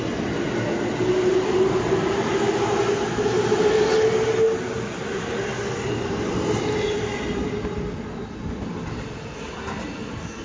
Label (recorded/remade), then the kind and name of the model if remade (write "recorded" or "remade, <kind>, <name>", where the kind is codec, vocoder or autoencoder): recorded